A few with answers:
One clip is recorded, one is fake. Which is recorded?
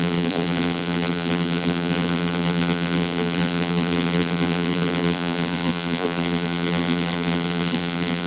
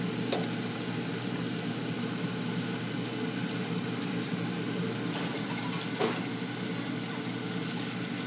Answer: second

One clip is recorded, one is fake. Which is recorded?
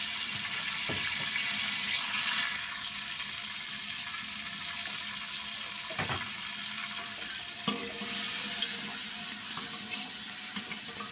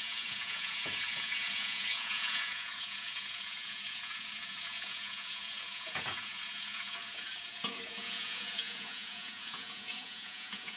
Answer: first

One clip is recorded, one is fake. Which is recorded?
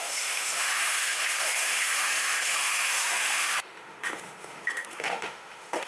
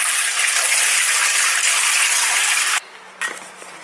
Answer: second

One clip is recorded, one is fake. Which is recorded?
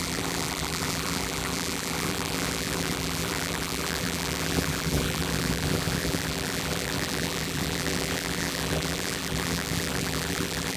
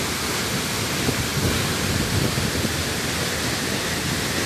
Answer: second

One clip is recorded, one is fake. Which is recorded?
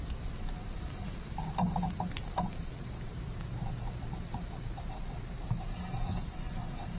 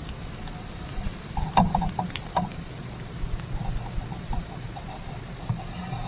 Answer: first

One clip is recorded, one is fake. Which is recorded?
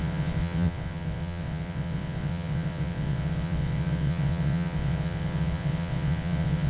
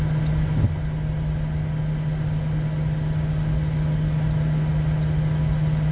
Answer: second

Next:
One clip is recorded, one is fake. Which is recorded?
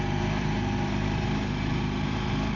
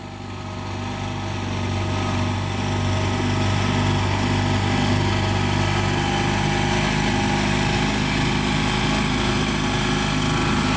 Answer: second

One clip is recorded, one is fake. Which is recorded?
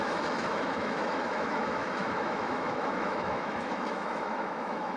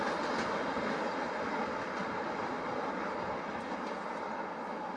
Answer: second